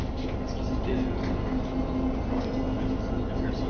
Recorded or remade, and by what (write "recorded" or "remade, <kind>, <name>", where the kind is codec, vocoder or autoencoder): recorded